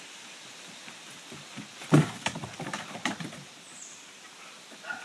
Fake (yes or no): no